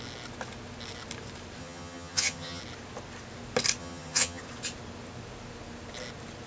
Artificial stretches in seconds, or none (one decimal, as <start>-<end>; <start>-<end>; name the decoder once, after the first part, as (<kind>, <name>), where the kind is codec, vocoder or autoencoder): 1.6-2.6 (vocoder, HiFi-GAN); 3.8-4.4

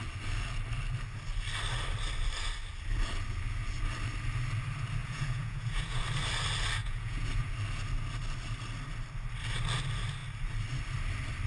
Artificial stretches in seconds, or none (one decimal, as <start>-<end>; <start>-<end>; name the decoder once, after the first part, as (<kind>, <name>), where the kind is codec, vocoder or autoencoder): 5.0-6.0 (vocoder, Vocos); 6.8-7.5

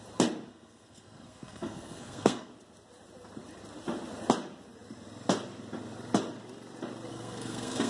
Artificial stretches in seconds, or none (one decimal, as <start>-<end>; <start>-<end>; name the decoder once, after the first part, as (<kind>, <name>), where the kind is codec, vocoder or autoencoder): 0.5-2.5 (codec, SNAC); 7.1-7.9

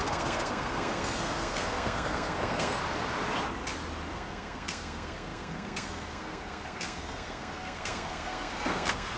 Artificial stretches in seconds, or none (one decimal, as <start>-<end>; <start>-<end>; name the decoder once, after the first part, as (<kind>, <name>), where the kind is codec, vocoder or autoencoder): 0.0-2.8 (codec, SNAC); 4.1-9.2

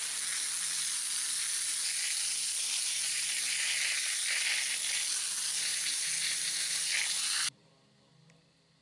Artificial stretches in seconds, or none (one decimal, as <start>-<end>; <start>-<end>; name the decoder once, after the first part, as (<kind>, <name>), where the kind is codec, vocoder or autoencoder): 2.3-4.2 (vocoder, BigVGAN v2); 5.7-6.8

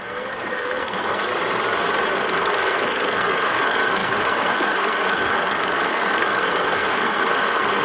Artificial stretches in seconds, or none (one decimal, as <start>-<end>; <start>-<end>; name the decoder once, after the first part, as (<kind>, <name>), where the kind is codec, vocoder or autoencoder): 0.0-1.3 (codec, SNAC); 2.1-7.8

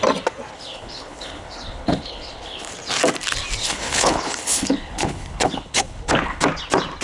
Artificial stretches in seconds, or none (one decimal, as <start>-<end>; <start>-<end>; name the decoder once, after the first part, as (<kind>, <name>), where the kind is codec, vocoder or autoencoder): 0.5-2.7 (codec, HILCodec); 3.6-6.4

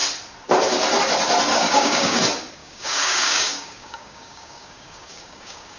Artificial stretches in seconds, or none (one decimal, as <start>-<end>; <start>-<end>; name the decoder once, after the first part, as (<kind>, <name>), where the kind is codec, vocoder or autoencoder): 1.5-2.2 (codec, DAC); 2.6-5.8